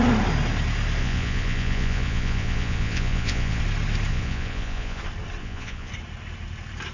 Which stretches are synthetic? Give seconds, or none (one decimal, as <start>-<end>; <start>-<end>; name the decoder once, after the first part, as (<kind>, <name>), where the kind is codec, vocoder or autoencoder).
1.0-3.6 (vocoder, Vocos); 4.1-5.0; 5.4-5.9